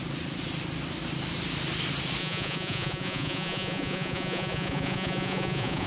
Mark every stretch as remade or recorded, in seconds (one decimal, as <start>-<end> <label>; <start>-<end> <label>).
0.0-2.2 recorded; 2.2-5.9 remade